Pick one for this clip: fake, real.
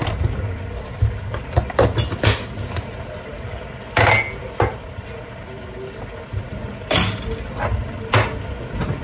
real